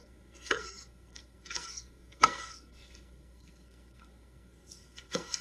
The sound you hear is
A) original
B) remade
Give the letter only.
B